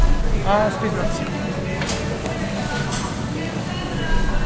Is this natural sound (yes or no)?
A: yes